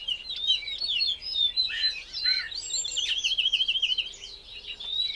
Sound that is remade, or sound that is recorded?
recorded